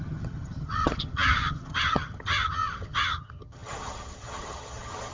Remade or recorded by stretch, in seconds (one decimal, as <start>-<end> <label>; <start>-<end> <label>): 0.0-5.1 remade